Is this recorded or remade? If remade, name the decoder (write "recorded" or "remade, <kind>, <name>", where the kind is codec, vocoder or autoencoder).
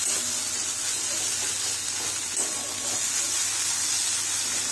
recorded